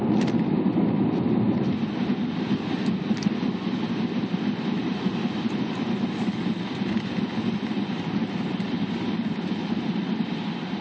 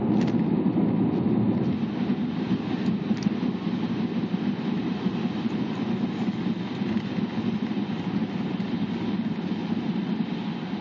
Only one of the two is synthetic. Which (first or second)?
first